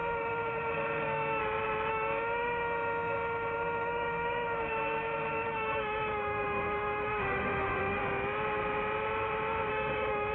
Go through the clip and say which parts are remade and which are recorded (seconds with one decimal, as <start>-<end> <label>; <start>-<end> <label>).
0.0-1.4 remade; 1.4-1.9 recorded; 1.9-8.0 remade; 8.0-9.7 recorded; 9.7-10.3 remade